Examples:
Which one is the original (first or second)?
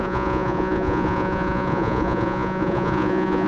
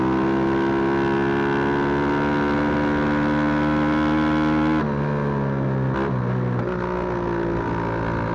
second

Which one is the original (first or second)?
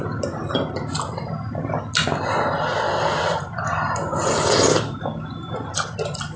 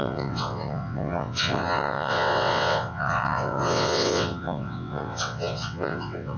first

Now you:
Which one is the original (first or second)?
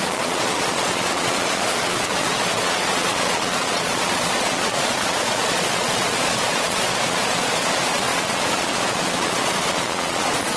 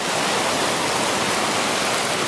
second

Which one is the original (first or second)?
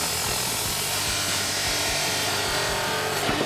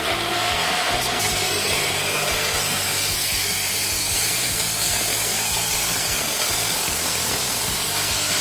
first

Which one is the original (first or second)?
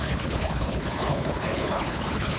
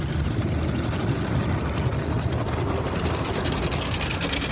second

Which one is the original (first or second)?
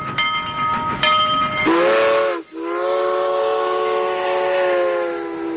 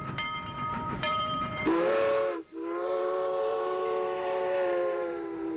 first